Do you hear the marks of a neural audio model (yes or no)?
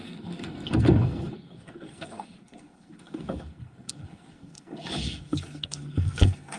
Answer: yes